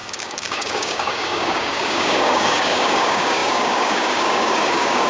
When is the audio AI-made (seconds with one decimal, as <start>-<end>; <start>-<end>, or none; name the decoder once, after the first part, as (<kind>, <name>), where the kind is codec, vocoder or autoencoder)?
0.0-5.1 (codec, DAC)